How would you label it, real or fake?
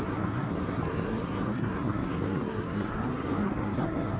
fake